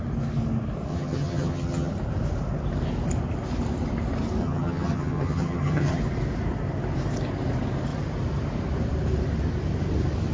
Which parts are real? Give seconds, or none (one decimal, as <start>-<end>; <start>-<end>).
0.0-0.9; 1.9-4.4; 6.0-10.3

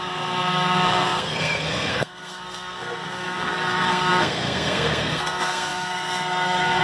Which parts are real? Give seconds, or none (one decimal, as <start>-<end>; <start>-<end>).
none

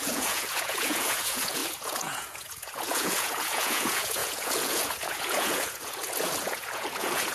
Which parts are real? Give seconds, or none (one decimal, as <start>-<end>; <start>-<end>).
none

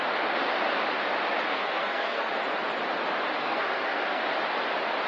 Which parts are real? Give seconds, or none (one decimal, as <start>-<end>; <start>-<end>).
0.0-1.5; 2.3-3.4; 4.2-5.1

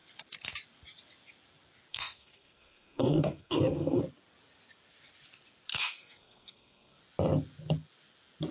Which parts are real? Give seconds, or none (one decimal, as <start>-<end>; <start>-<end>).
0.0-1.9; 4.0-5.7; 7.0-8.5

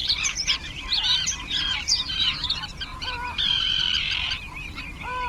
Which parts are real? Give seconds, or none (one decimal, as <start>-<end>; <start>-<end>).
none